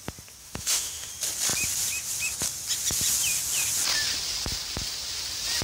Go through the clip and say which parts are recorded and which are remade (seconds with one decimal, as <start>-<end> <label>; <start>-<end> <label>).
0.0-0.4 recorded; 0.4-1.1 remade; 1.1-5.6 recorded